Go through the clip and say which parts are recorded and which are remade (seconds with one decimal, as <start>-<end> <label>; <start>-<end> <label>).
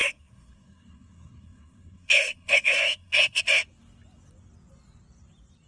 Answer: 0.0-3.4 remade; 3.4-5.7 recorded